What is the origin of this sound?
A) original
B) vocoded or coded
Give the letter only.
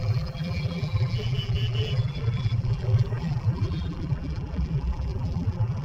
B